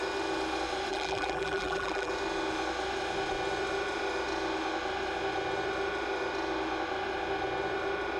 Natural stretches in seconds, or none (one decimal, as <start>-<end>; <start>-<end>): 0.0-0.9; 2.1-8.2